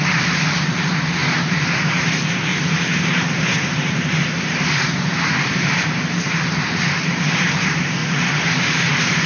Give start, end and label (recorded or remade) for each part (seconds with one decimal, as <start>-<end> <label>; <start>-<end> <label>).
0.0-9.3 remade